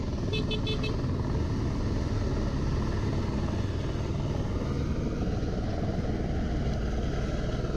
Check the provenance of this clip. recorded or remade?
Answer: recorded